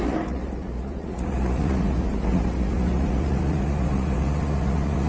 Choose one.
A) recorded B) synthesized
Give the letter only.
B